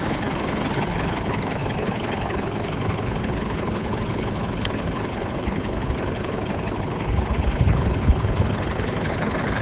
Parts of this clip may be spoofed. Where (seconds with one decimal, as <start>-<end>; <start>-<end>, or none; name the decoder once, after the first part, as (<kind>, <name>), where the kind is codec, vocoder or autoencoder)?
0.0-9.6 (codec, HILCodec)